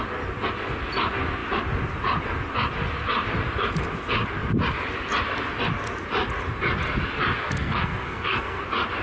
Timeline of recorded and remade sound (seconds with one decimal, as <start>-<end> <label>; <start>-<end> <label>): 0.0-7.4 recorded; 7.4-8.6 remade; 8.6-9.0 recorded